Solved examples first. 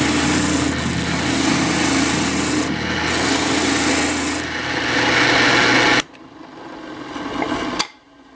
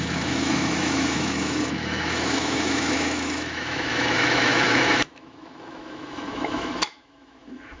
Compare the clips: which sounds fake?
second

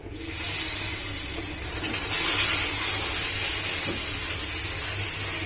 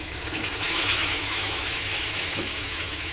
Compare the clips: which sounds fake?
second